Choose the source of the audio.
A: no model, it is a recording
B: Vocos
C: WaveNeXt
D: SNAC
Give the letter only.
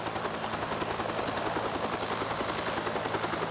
A